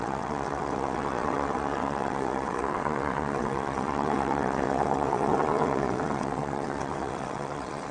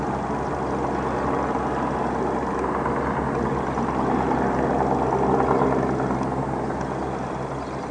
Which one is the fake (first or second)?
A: first